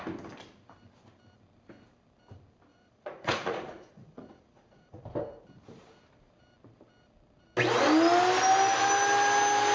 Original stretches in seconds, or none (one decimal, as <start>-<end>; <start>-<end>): 0.0-2.7; 5.0-9.7